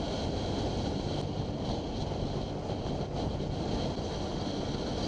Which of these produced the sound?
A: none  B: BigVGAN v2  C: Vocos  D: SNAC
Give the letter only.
A